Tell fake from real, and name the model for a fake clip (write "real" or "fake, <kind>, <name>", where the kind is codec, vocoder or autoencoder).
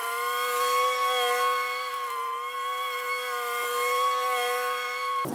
real